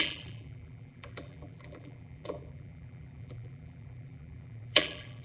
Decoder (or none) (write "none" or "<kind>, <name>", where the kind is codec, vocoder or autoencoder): vocoder, BigVGAN v2